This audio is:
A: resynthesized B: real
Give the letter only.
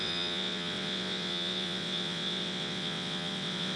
A